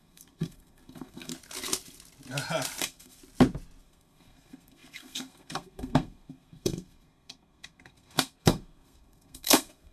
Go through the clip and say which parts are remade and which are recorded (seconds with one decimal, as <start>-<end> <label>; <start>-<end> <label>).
0.0-1.3 remade; 1.3-2.8 recorded; 2.8-3.2 remade; 3.2-3.8 recorded; 3.8-9.9 remade